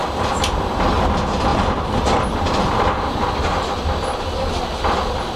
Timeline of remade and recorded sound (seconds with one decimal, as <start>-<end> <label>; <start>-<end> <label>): 0.0-1.5 recorded; 1.5-3.0 remade; 3.0-5.4 recorded